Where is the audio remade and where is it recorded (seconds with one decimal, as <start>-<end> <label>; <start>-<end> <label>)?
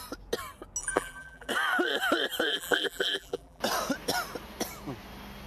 0.0-0.8 recorded; 0.8-1.5 remade; 1.5-2.5 recorded; 2.5-3.6 remade; 3.6-5.5 recorded